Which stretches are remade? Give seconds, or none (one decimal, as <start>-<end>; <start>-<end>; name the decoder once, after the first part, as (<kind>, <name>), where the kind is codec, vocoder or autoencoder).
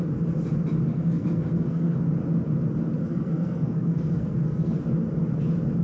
0.9-2.0 (codec, SNAC); 3.0-4.8